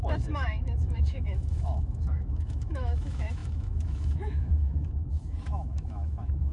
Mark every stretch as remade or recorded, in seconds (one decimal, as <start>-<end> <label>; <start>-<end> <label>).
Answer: 0.0-6.5 remade